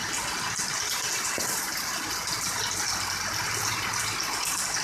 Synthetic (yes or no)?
no